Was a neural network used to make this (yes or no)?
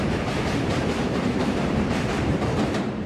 yes